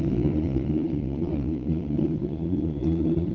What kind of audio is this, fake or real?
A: fake